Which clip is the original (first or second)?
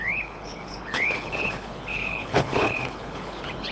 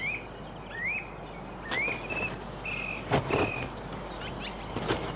second